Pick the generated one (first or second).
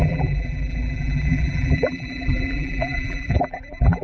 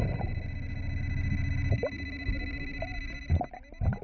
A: first